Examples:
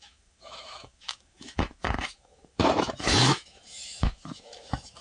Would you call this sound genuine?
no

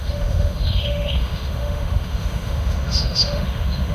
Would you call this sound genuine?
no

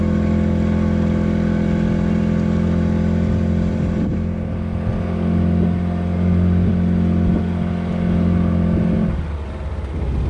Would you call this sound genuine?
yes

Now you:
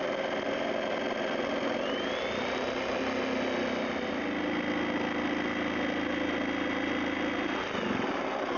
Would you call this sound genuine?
yes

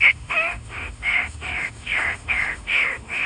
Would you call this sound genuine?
no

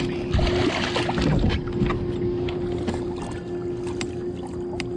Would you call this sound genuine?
yes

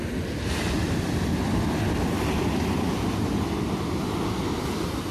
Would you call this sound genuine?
yes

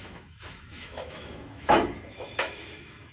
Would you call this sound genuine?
no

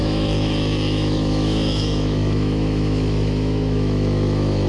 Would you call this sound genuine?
no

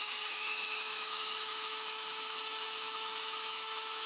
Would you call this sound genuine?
no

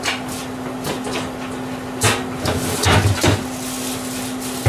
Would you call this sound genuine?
yes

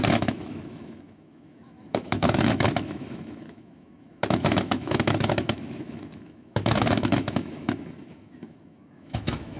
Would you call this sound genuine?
no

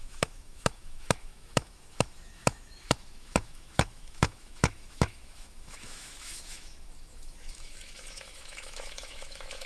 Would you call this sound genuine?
no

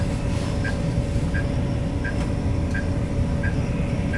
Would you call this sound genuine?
yes